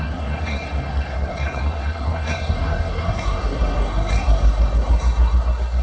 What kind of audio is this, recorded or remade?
remade